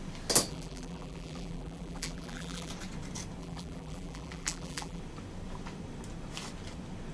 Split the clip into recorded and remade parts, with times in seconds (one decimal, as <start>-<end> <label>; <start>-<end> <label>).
0.0-0.5 recorded; 0.5-2.7 remade; 2.7-3.4 recorded; 3.4-5.0 remade; 5.0-7.1 recorded